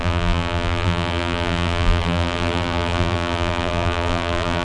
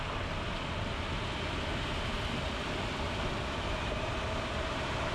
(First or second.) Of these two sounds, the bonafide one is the second